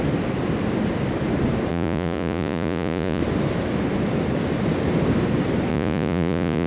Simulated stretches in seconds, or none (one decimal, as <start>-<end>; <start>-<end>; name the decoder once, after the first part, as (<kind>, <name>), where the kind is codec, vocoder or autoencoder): 1.7-3.2 (vocoder, Vocos); 5.7-6.7